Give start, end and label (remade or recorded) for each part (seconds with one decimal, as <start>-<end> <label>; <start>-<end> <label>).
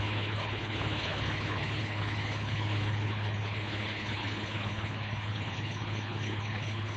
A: 0.0-7.0 remade